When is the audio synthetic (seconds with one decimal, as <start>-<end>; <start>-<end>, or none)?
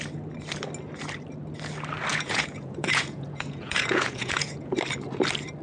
2.1-4.8